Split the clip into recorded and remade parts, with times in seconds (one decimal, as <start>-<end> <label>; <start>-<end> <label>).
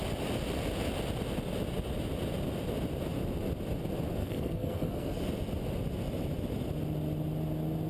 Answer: 0.0-4.2 recorded; 4.2-5.2 remade; 5.2-7.9 recorded